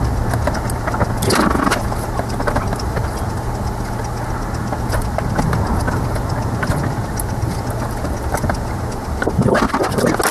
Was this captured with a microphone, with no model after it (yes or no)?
yes